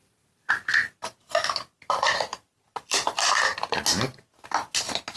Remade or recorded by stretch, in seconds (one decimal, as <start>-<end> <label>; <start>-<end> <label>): 0.0-0.5 remade; 0.5-2.3 recorded; 2.3-3.8 remade; 3.8-5.2 recorded